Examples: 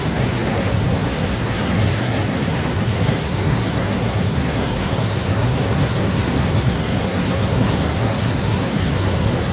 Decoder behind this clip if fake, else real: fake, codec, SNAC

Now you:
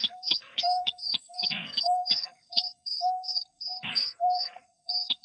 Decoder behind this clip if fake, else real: fake, codec, SNAC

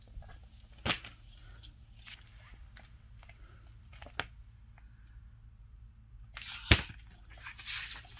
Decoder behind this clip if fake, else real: real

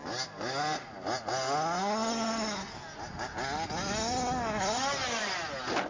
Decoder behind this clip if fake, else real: real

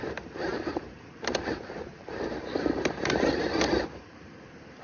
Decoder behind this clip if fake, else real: fake, vocoder, BigVGAN v2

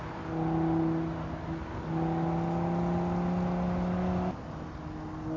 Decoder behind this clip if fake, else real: real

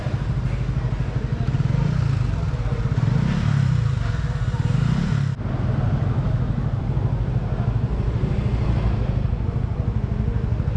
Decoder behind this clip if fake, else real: real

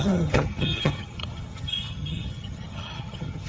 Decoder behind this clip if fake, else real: fake, vocoder, HiFi-GAN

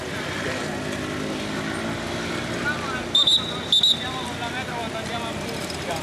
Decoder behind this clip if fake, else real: real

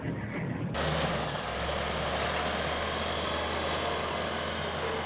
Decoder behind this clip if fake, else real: real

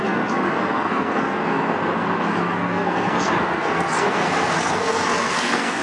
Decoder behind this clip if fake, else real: fake, codec, SNAC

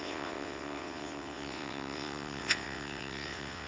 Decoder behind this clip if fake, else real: fake, vocoder, WaveNeXt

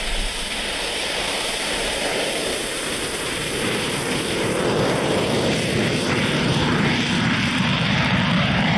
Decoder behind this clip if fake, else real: fake, vocoder, BigVGAN v2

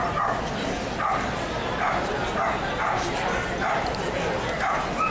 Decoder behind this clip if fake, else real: real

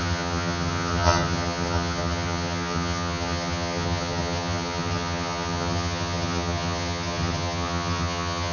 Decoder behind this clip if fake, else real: fake, vocoder, HiFi-GAN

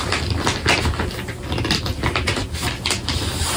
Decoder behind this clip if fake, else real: real